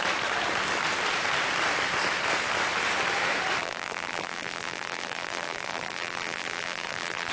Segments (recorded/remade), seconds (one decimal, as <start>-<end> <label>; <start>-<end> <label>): 0.0-3.6 recorded; 3.6-7.3 remade